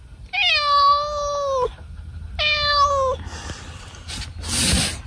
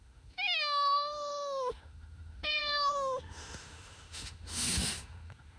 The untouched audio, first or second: first